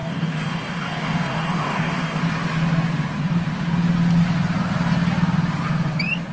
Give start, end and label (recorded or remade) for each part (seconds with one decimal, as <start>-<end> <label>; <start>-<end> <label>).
0.0-2.2 remade; 2.2-6.3 recorded